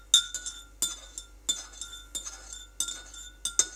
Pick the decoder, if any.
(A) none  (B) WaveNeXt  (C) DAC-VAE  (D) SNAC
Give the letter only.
A